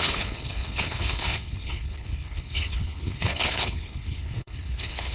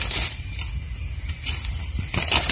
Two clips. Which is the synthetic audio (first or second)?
first